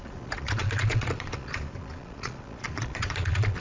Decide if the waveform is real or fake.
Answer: fake